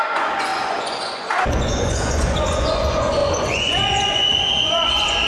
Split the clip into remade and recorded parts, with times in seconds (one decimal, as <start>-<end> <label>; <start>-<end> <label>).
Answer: 0.0-5.3 remade